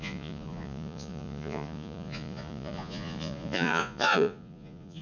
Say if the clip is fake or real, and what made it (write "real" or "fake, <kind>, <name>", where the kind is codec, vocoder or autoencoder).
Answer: fake, vocoder, Vocos